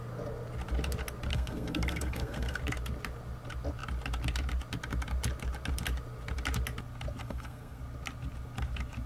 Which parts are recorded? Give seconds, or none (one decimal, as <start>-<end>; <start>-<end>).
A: 0.0-1.3; 2.6-7.2; 7.8-9.1